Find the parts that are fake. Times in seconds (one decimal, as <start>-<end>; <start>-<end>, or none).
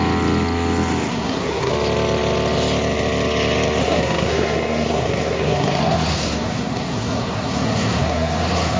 1.1-1.7; 3.8-8.8